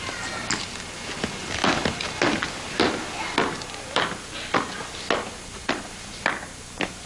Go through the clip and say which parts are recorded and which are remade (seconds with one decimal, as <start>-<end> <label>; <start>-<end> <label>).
0.0-7.1 recorded